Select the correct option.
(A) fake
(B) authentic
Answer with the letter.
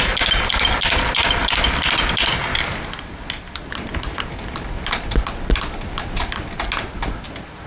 B